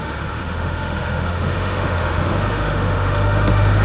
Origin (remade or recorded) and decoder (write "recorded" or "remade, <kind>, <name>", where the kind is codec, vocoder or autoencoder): remade, autoencoder, DAC-VAE